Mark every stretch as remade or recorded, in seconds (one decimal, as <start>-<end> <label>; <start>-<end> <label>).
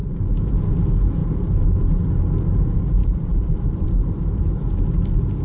0.0-0.6 remade; 0.6-1.2 recorded; 1.2-1.9 remade; 1.9-3.0 recorded; 3.0-4.2 remade; 4.2-5.4 recorded